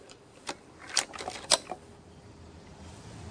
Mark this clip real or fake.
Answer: fake